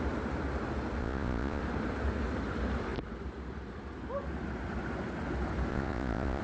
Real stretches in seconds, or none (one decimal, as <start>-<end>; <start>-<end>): 0.0-1.0; 1.6-5.7